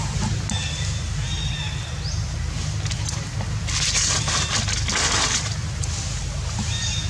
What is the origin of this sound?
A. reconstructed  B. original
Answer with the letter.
B